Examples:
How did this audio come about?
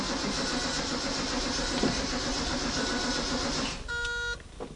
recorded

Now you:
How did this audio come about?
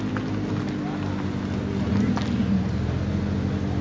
recorded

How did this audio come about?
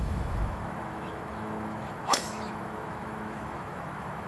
remade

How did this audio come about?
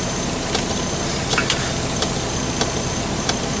remade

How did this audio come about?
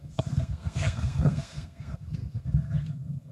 remade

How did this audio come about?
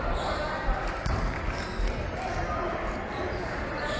recorded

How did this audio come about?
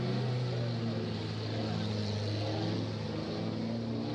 recorded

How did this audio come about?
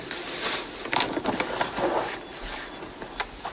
recorded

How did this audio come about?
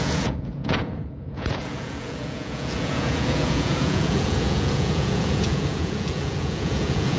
remade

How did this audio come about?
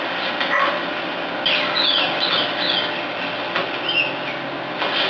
recorded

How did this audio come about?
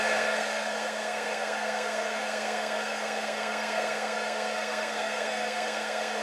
remade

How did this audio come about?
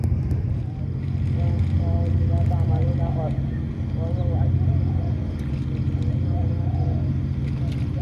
recorded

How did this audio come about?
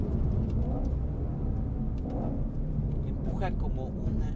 recorded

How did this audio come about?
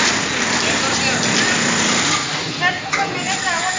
recorded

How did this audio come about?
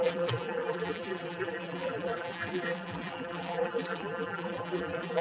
remade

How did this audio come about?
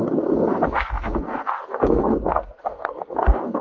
remade